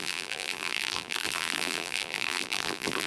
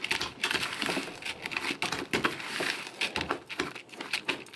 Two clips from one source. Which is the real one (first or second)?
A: second